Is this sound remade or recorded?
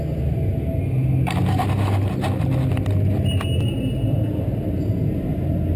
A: recorded